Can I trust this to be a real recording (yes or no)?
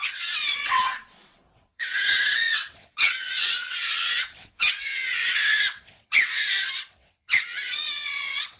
no